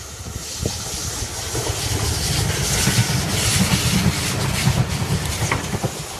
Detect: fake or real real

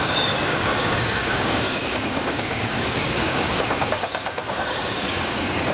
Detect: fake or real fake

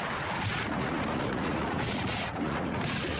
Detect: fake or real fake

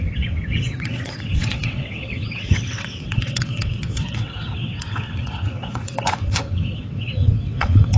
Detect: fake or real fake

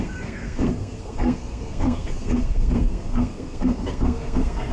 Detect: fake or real fake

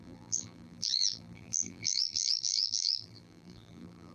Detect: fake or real fake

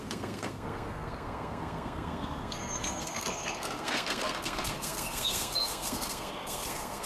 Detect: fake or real fake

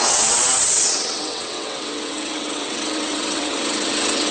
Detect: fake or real fake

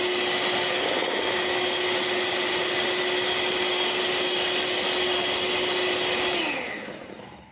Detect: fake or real real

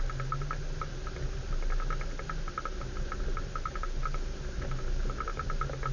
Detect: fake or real real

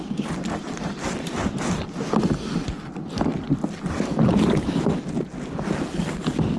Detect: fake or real real